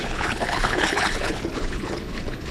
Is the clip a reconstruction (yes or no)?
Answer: yes